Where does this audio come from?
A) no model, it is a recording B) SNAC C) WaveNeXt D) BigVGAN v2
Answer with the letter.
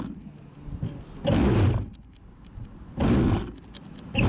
A